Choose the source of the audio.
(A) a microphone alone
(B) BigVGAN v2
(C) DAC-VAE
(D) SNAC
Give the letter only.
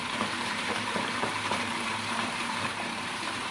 B